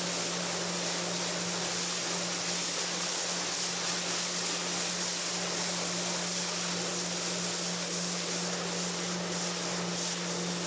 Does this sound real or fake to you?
real